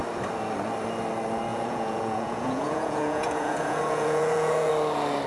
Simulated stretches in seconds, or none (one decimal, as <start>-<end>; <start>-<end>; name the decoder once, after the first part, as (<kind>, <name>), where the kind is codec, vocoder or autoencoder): 1.5-4.7 (vocoder, Vocos)